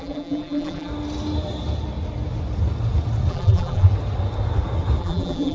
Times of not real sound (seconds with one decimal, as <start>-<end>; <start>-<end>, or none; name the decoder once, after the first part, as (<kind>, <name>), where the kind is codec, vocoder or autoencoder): 0.0-0.9 (vocoder, BigVGAN v2); 3.3-3.9; 5.0-5.5

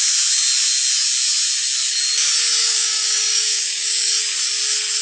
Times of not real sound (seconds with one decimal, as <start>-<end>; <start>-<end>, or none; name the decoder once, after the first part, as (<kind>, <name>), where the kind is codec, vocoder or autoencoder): 2.6-4.2 (codec, DAC)